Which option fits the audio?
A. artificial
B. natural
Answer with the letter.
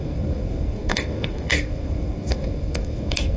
A